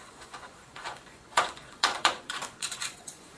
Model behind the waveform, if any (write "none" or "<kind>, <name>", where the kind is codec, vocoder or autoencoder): vocoder, Vocos